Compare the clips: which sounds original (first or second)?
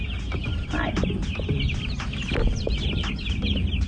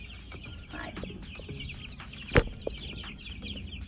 second